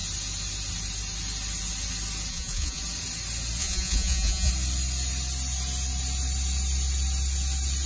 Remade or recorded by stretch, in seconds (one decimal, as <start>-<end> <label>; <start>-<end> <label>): 0.0-2.3 recorded; 2.3-2.8 remade; 2.8-3.6 recorded; 3.6-4.5 remade; 4.5-7.9 recorded